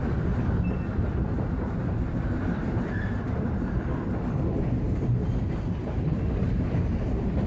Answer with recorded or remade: remade